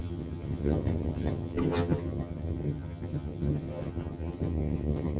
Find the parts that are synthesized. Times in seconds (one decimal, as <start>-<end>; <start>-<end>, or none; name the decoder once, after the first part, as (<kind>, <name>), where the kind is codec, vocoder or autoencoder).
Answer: 0.0-5.2 (vocoder, HiFi-GAN)